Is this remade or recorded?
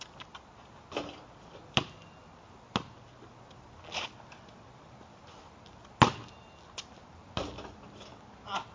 recorded